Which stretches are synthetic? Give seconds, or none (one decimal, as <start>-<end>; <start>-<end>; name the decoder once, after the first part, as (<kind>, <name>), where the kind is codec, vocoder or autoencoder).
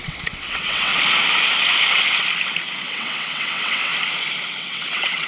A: 0.0-0.9 (vocoder, WaveNeXt); 2.9-3.9; 4.6-5.3